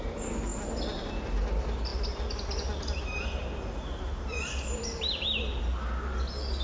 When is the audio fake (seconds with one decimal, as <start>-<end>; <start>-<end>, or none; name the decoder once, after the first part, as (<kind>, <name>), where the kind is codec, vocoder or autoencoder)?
none